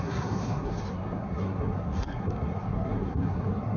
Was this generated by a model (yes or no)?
yes